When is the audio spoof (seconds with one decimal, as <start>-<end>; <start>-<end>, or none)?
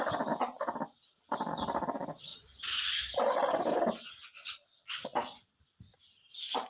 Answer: none